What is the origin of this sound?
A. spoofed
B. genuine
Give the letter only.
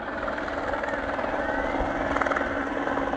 B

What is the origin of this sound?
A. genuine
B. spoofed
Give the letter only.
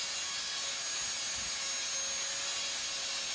A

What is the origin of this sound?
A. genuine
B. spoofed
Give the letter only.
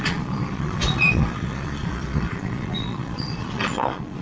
B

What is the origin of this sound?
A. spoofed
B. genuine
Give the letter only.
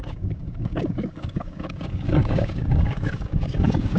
A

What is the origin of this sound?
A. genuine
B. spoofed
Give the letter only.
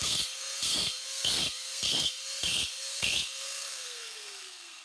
B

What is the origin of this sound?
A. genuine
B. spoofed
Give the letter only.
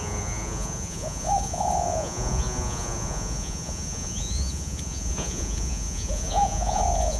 B